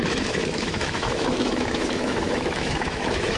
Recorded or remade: remade